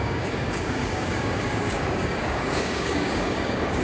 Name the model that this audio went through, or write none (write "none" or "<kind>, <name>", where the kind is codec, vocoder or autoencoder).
codec, DAC